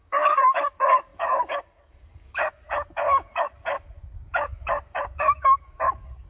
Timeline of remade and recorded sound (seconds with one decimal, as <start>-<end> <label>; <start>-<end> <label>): 0.0-6.3 remade